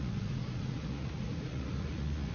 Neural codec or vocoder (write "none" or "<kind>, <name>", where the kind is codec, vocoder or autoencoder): vocoder, Vocos